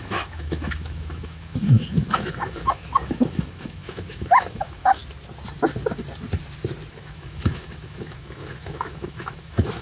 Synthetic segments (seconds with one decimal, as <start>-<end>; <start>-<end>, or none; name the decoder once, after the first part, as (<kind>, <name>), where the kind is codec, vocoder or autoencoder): 0.0-5.0 (autoencoder, DAC-VAE); 6.9-9.8